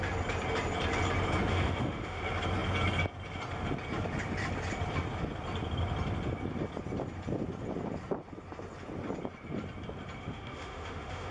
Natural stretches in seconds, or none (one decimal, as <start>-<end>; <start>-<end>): 0.0-1.5; 2.2-10.2